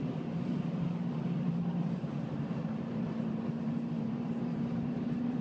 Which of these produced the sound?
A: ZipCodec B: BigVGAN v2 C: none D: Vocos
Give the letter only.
B